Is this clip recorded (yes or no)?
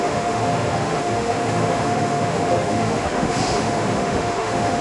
no